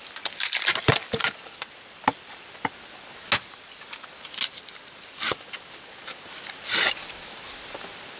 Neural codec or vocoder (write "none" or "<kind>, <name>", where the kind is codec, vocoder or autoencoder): none